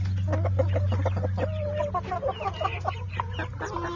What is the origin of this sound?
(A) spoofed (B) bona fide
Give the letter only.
B